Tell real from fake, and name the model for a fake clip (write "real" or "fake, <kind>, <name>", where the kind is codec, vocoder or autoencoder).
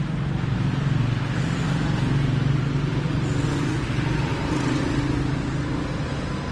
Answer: real